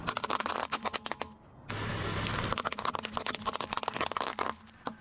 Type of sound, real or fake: real